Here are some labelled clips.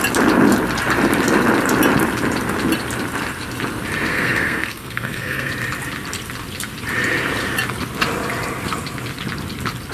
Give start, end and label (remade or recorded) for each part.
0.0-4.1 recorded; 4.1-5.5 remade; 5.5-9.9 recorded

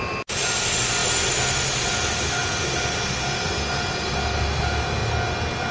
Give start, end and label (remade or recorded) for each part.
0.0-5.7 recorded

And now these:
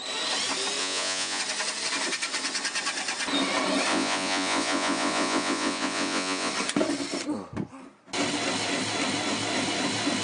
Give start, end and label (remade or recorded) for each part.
0.0-0.8 recorded; 0.8-1.4 remade; 1.4-3.9 recorded; 3.9-6.5 remade; 6.5-10.2 recorded

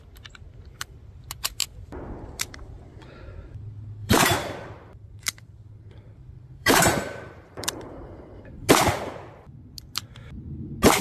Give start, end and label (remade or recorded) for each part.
0.0-4.0 recorded; 4.0-8.7 remade; 8.7-11.0 recorded

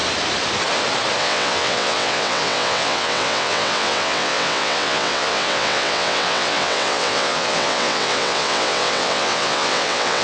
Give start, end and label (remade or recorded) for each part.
0.0-1.2 recorded; 1.2-10.2 remade

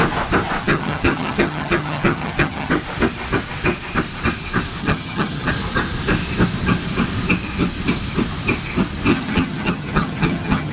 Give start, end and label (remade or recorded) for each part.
0.0-0.6 recorded; 0.6-2.7 remade; 2.7-4.8 recorded; 4.8-5.5 remade; 5.5-9.1 recorded; 9.1-10.7 remade

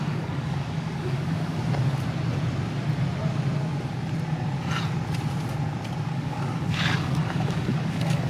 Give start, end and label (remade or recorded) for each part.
0.0-1.6 remade; 1.6-6.1 recorded; 6.1-8.3 remade